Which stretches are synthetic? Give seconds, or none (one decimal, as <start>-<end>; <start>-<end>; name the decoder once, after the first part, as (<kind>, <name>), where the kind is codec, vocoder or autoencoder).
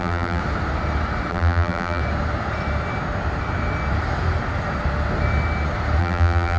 0.0-0.4 (vocoder, BigVGAN v2); 1.3-2.0; 6.0-6.6